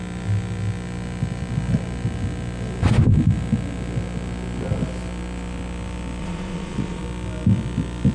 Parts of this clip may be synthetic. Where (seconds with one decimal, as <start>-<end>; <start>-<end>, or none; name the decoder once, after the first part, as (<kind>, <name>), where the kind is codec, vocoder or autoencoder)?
6.2-7.0 (vocoder, Vocos)